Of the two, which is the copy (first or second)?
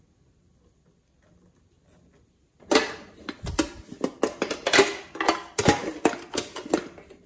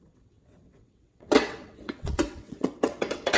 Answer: second